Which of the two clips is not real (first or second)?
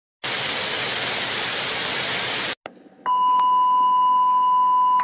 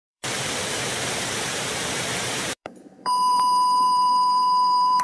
second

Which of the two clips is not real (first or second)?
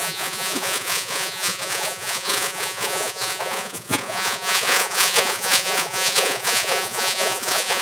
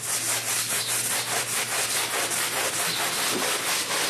first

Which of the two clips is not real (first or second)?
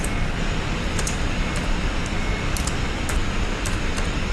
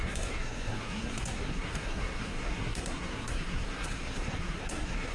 second